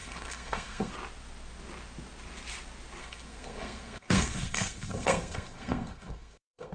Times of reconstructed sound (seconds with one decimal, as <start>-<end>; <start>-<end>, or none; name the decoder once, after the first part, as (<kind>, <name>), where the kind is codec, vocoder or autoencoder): 0.0-0.9 (codec, SNAC); 3.0-6.7